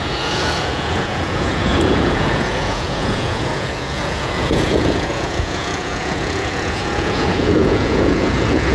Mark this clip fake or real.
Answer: fake